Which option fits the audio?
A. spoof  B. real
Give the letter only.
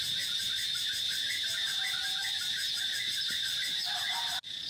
B